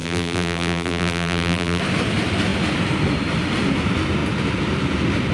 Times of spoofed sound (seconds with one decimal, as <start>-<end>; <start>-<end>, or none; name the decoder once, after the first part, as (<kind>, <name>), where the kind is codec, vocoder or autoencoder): 0.0-1.8 (vocoder, BigVGAN v2)